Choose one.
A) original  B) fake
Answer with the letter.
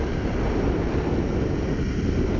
A